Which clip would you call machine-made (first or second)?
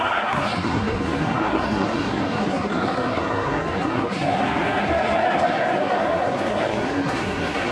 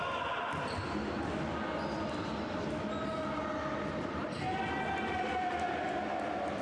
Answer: first